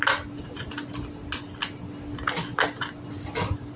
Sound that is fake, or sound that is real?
real